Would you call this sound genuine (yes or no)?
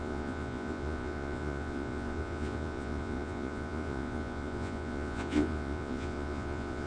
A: no